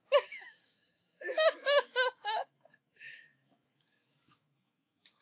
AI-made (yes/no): yes